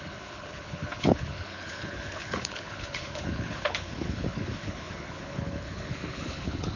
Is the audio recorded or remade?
remade